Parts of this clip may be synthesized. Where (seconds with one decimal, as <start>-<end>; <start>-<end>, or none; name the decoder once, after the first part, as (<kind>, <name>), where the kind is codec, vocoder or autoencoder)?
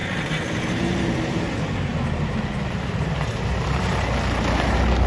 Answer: 0.0-1.9 (vocoder, BigVGAN v2)